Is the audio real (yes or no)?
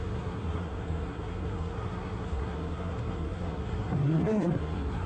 no